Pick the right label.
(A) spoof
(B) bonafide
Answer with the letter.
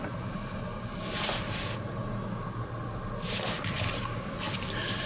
B